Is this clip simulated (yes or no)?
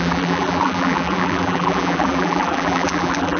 yes